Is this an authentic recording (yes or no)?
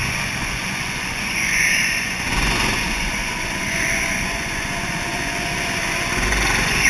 no